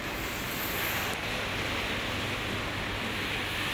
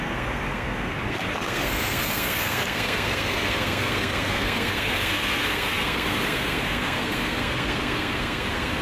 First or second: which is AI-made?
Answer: second